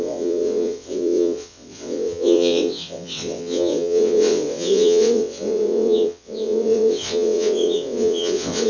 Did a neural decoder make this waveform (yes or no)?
yes